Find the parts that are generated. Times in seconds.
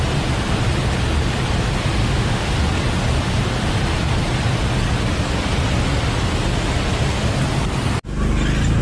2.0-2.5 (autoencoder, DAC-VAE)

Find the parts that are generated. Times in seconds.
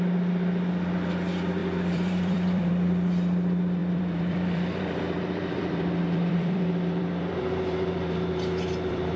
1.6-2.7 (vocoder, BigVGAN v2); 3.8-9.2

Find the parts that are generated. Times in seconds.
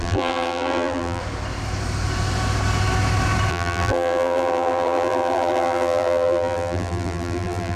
0.0-1.2 (vocoder, BigVGAN v2); 3.5-7.8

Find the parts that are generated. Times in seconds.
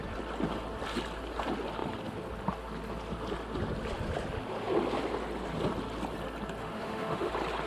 6.6-7.3 (autoencoder, DAC-VAE)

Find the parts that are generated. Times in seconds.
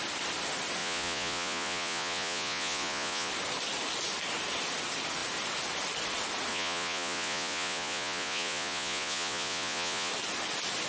0.8-3.3 (vocoder, Vocos); 6.5-10.1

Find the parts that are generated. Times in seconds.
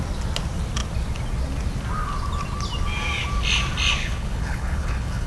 4.0-5.3 (codec, HILCodec)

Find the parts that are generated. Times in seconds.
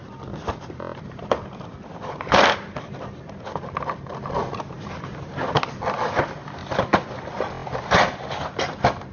none